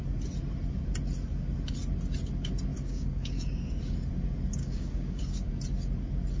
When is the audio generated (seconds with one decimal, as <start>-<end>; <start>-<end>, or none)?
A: 2.7-3.7; 4.6-5.5